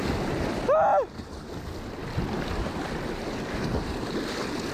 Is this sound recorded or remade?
recorded